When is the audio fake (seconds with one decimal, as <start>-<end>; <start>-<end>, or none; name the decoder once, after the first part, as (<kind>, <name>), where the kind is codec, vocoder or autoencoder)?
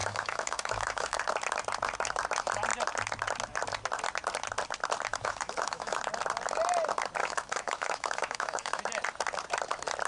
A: 0.0-1.2 (autoencoder, DAC-VAE); 5.1-6.0; 7.2-8.8